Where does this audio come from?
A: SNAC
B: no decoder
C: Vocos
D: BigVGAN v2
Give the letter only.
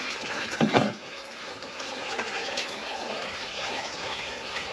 A